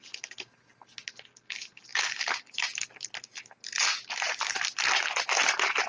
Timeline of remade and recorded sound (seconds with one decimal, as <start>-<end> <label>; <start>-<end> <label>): 0.0-5.9 recorded